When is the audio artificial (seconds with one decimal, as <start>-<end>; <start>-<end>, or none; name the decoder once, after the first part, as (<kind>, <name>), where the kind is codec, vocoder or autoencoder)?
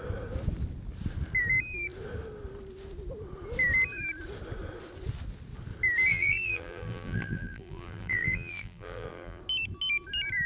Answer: 6.1-9.4 (vocoder, BigVGAN v2)